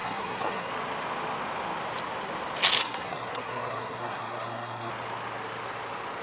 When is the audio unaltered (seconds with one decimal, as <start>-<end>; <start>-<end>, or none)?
0.7-2.8; 4.9-6.2